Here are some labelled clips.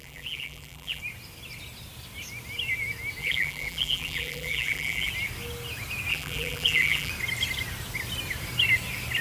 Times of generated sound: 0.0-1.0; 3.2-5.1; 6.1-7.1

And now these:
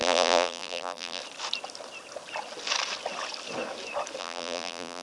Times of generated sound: 0.0-1.2; 4.2-5.0